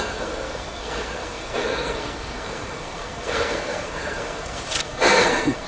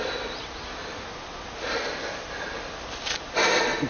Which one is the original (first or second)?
second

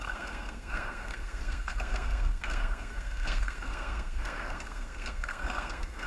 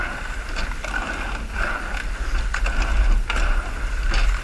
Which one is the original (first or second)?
second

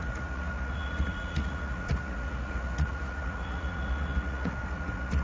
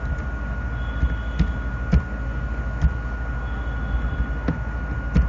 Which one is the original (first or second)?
second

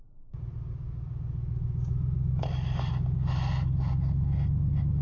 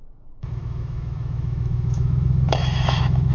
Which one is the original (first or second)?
first